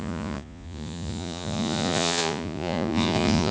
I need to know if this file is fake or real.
fake